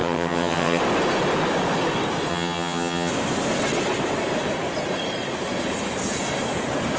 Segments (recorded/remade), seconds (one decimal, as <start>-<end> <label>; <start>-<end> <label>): 0.0-0.8 remade; 0.8-2.3 recorded; 2.3-3.1 remade; 3.1-7.0 recorded